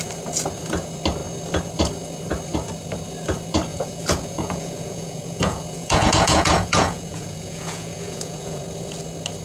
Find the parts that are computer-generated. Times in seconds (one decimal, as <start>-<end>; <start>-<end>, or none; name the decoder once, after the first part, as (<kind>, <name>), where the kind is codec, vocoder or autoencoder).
3.7-8.6 (vocoder, Vocos)